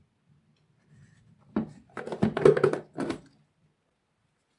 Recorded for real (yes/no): yes